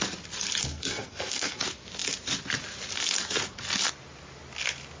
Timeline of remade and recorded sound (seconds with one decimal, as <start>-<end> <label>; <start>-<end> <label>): 0.0-0.6 recorded; 0.6-1.6 remade; 1.6-5.0 recorded